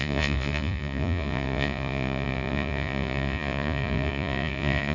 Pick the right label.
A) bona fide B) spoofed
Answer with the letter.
B